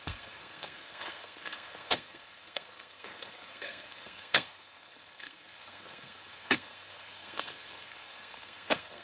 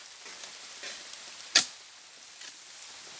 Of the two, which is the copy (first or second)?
first